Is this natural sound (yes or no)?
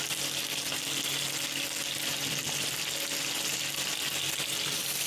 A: yes